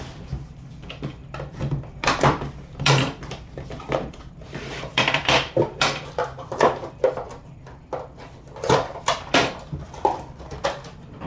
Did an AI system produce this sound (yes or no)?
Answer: yes